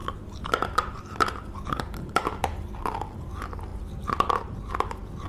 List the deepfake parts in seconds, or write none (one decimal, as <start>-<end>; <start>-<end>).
none